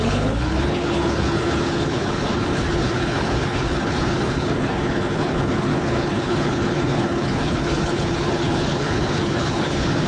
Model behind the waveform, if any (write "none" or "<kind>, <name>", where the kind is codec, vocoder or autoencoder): codec, HILCodec